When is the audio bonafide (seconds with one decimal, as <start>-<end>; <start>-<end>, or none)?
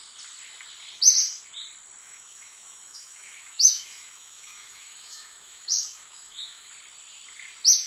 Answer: 0.0-2.0; 6.7-7.9